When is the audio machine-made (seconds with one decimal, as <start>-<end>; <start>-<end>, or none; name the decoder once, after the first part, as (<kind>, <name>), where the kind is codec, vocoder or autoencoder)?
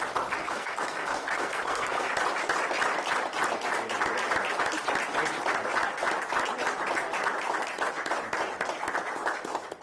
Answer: 0.4-2.1 (codec, SNAC)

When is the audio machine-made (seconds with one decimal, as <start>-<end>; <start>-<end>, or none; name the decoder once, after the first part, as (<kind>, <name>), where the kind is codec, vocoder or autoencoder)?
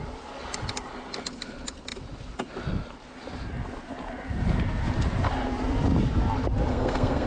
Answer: 6.7-7.3 (codec, SNAC)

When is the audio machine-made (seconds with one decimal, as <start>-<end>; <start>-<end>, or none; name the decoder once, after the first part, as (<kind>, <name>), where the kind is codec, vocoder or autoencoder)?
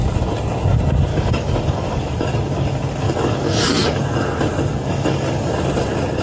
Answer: 1.1-4.0 (codec, DAC); 4.7-5.5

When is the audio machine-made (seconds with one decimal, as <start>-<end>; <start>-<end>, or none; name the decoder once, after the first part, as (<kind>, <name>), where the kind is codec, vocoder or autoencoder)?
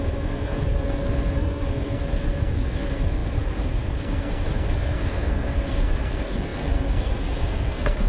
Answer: 0.0-8.1 (codec, SNAC)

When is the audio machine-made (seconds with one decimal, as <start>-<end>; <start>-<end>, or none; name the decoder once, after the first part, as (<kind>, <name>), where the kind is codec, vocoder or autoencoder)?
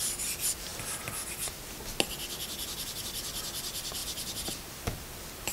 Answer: 4.0-4.5 (vocoder, BigVGAN v2)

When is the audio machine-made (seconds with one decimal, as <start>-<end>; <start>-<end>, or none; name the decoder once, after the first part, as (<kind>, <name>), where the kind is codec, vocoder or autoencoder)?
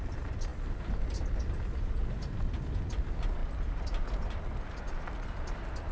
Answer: none